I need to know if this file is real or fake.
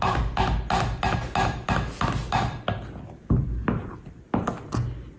real